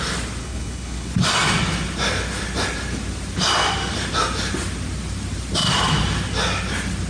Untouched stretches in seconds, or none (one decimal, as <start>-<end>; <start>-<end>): 0.0-0.4; 1.1-7.1